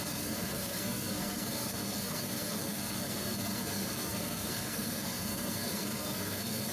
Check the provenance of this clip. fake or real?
fake